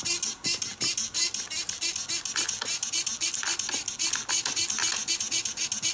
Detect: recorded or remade recorded